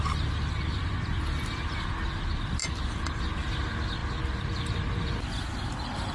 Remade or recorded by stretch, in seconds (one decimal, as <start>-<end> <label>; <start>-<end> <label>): 0.0-2.6 recorded; 2.6-3.2 remade; 3.2-6.1 recorded